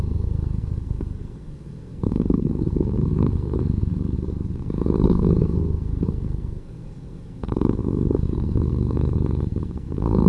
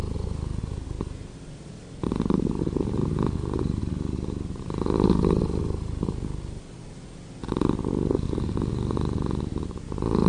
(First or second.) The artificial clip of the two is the first